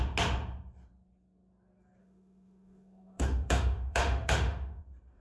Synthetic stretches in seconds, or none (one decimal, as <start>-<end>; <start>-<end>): 2.0-4.8

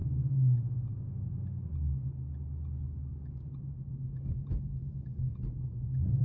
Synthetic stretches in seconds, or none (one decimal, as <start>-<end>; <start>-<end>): 0.0-1.7; 3.9-5.3

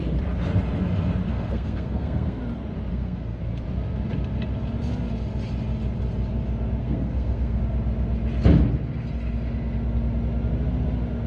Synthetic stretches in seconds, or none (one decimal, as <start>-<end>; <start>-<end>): 1.3-2.4; 2.9-3.4; 6.8-7.6

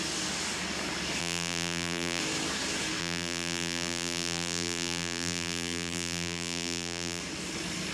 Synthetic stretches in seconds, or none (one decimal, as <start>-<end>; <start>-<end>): 1.2-2.2; 3.0-7.2